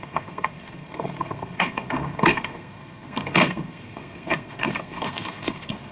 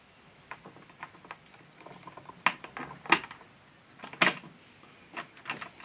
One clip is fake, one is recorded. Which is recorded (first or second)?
second